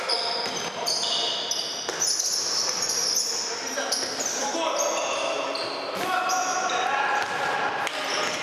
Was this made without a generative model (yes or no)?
yes